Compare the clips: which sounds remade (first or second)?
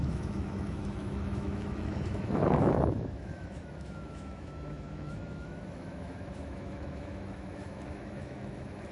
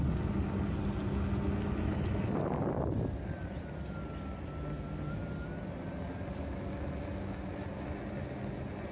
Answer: first